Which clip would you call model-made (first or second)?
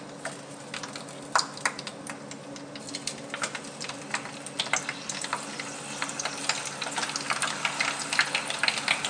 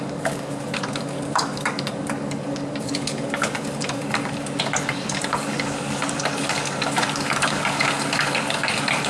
second